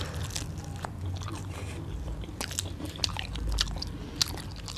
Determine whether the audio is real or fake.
real